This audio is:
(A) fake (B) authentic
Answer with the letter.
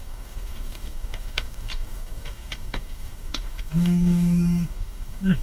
A